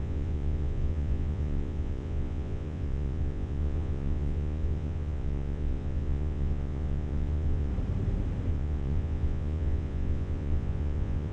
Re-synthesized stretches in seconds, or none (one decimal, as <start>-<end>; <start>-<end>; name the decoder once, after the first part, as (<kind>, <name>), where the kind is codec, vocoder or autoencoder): 0.0-7.7 (vocoder, Vocos); 8.5-11.3